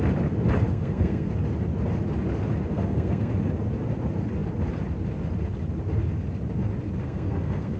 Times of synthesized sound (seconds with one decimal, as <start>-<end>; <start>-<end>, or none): 0.7-1.3; 2.7-3.3; 7.0-7.8